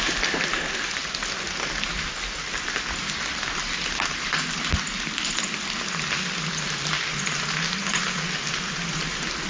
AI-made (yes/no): no